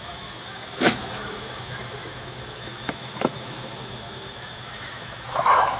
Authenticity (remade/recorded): remade